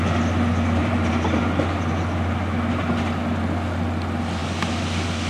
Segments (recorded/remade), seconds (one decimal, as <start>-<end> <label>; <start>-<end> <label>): 0.0-0.8 recorded; 0.8-1.4 remade; 1.4-5.3 recorded